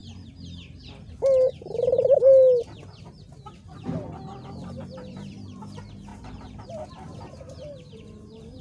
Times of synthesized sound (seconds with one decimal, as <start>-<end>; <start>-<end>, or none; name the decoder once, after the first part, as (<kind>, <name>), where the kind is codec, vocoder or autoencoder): 4.8-8.6 (vocoder, BigVGAN v2)